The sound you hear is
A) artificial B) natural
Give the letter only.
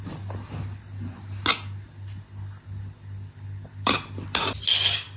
B